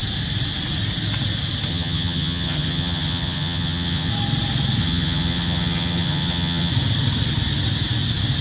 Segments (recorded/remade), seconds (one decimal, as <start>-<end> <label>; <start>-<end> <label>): 0.0-1.7 recorded; 1.7-4.1 remade; 4.1-4.8 recorded; 4.8-6.7 remade; 6.7-8.4 recorded